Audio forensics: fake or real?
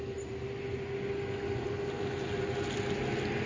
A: real